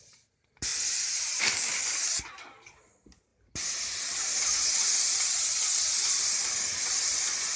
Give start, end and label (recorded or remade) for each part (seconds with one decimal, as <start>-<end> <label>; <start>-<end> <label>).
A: 0.0-0.7 recorded; 0.7-2.1 remade; 2.1-7.6 recorded